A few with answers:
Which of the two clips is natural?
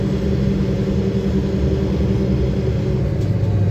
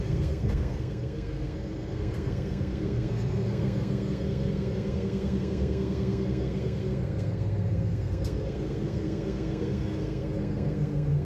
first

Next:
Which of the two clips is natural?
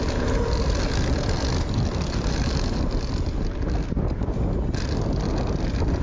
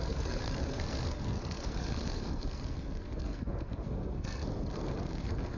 first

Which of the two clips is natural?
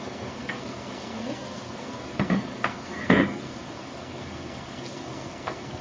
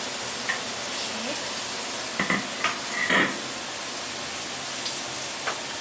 second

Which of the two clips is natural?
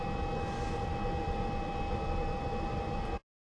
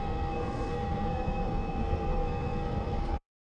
first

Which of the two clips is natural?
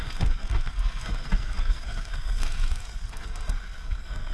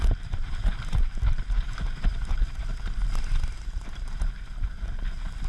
second